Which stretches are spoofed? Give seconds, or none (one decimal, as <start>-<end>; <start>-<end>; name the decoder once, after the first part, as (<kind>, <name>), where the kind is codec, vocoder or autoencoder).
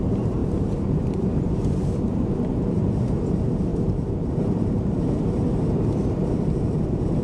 0.0-7.2 (vocoder, BigVGAN v2)